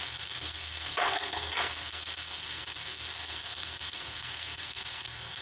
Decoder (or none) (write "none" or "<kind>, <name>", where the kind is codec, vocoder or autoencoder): codec, SNAC